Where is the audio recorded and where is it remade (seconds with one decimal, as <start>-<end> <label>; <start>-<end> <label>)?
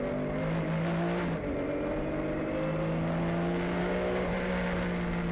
0.0-3.8 recorded; 3.8-4.5 remade; 4.5-5.3 recorded